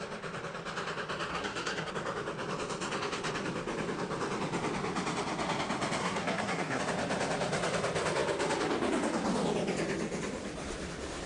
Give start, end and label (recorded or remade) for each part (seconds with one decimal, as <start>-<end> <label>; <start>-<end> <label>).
0.0-1.3 recorded; 1.3-1.9 remade; 1.9-6.0 recorded; 6.0-6.8 remade; 6.8-11.3 recorded

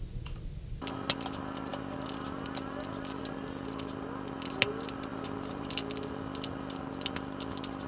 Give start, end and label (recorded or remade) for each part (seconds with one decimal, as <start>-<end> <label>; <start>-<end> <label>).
0.0-1.7 recorded; 1.7-3.2 remade; 3.2-5.1 recorded; 5.1-5.7 remade; 5.7-7.9 recorded

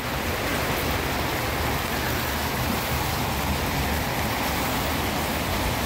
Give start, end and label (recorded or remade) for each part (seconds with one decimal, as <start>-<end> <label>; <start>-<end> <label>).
0.0-0.5 remade; 0.5-4.0 recorded; 4.0-5.9 remade

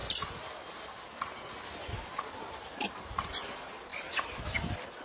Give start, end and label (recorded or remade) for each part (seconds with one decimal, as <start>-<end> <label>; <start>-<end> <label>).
0.0-5.0 recorded

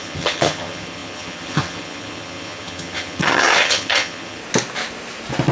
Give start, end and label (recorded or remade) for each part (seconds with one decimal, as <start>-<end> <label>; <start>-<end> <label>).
0.0-4.4 remade; 4.4-5.5 recorded

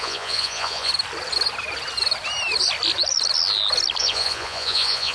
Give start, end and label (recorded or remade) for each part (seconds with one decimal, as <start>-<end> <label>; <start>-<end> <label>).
0.0-0.9 remade; 0.9-4.0 recorded; 4.0-5.1 remade